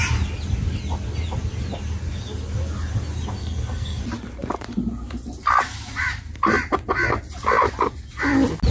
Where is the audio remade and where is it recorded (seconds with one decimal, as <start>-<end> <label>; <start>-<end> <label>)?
0.0-3.4 recorded; 3.4-4.0 remade; 4.0-8.7 recorded